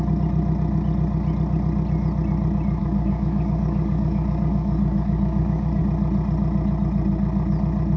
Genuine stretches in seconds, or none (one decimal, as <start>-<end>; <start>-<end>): 0.0-2.8; 5.8-8.0